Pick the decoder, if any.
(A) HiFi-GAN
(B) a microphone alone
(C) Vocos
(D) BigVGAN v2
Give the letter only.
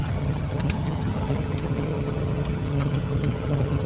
A